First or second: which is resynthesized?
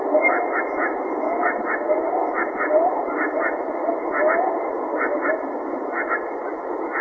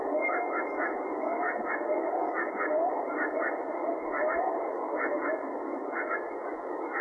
second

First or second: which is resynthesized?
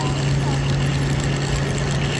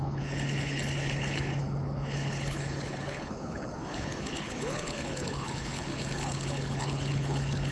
second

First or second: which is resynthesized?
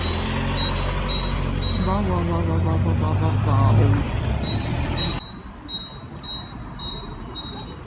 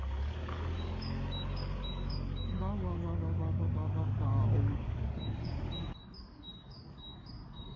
second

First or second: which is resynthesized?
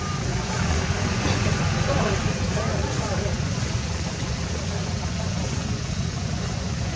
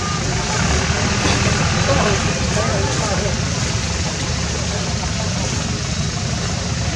first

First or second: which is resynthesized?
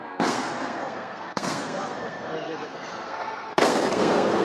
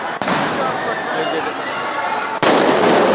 first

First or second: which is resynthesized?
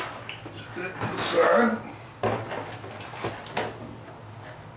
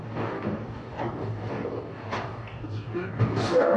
second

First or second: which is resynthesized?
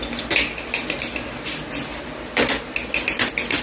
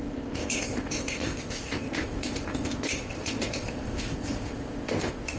second